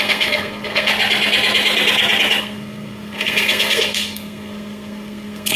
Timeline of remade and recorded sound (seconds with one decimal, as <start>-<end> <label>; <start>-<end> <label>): 0.0-0.9 remade; 0.9-2.4 recorded; 2.4-5.6 remade